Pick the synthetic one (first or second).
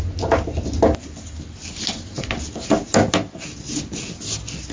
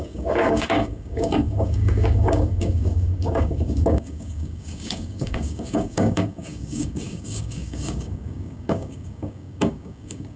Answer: second